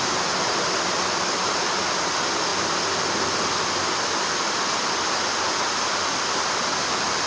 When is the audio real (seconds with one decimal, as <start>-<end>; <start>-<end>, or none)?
0.0-7.3